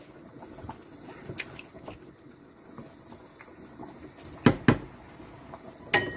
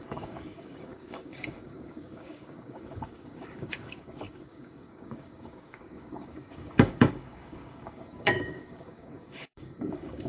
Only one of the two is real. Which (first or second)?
first